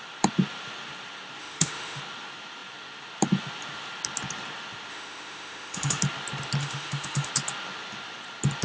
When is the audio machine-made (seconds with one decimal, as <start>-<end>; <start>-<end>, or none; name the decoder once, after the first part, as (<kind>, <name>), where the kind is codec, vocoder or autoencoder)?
1.4-2.0 (autoencoder, DAC-VAE); 4.9-6.0; 6.6-7.3